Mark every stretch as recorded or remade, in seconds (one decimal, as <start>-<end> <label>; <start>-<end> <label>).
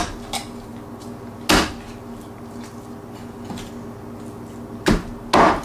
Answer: 0.0-5.6 recorded